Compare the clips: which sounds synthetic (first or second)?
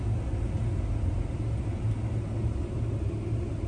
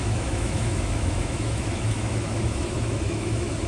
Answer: second